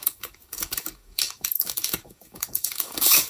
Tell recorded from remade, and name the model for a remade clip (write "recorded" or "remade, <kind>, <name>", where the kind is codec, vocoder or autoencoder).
remade, codec, DAC